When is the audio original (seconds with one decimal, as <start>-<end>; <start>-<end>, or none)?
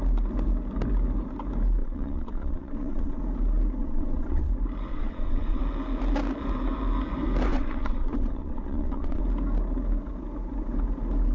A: 0.0-1.8; 3.2-3.8; 4.5-4.9; 5.6-7.5; 9.2-11.3